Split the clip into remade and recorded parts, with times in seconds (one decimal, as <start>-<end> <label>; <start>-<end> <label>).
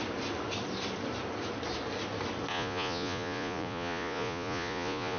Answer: 0.0-2.5 recorded; 2.5-5.2 remade